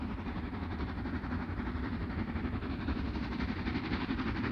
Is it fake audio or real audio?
fake